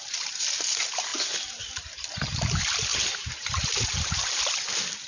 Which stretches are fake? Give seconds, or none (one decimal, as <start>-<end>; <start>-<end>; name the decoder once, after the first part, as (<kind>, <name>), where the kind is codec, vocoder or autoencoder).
2.9-4.2 (vocoder, BigVGAN v2)